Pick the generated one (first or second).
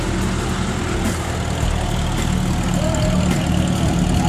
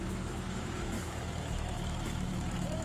second